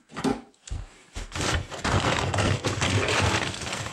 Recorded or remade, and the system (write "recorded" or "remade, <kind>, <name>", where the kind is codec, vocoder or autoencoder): remade, codec, SNAC